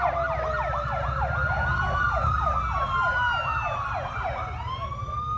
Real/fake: real